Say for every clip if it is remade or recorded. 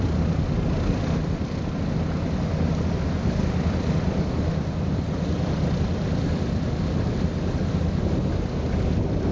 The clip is recorded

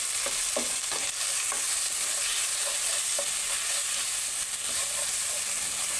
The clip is recorded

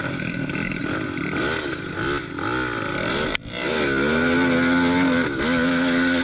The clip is recorded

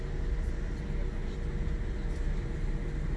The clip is recorded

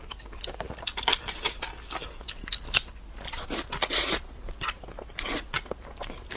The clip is recorded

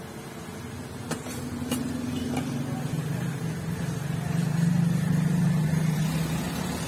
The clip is recorded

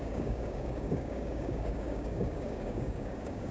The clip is remade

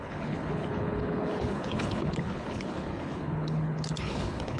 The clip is remade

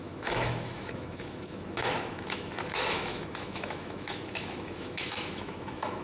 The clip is remade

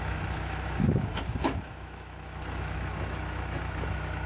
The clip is remade